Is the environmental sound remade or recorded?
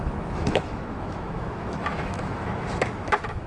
remade